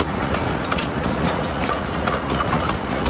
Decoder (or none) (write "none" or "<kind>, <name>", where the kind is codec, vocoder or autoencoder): vocoder, Vocos